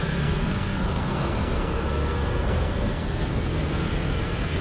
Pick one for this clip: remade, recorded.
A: remade